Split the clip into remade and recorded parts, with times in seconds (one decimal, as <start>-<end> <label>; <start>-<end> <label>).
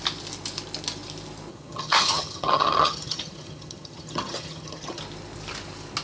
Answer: 0.0-1.5 recorded; 1.5-5.0 remade; 5.0-6.0 recorded